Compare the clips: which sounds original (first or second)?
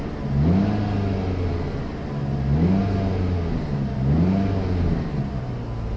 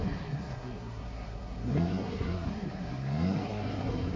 first